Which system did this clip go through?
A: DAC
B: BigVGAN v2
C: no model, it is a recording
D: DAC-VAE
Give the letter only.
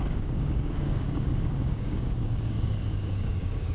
A